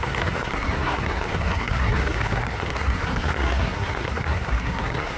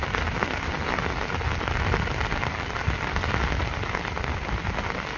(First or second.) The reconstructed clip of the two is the first